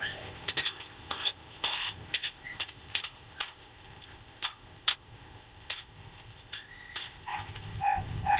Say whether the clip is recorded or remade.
remade